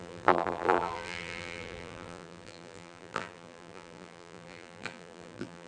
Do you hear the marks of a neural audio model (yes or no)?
yes